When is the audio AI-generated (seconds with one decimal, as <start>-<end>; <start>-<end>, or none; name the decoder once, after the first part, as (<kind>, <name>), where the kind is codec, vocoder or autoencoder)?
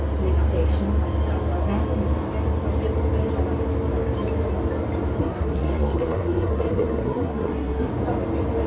5.2-7.9 (codec, SNAC)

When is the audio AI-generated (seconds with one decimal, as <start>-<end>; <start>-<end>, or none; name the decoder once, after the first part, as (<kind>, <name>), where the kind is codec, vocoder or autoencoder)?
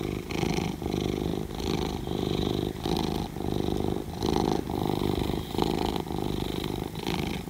1.3-2.7 (vocoder, BigVGAN v2); 6.5-7.5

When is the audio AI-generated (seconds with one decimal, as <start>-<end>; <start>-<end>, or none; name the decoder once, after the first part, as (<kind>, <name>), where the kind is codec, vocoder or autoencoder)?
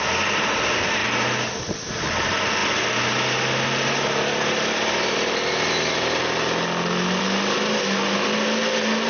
none